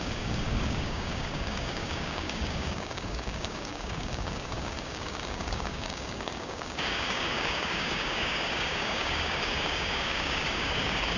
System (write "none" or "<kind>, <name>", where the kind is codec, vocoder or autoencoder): codec, DAC